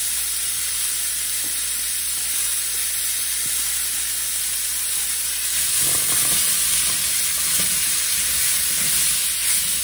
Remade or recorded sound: recorded